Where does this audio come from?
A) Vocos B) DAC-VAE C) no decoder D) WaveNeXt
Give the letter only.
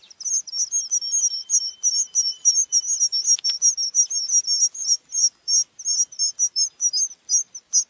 C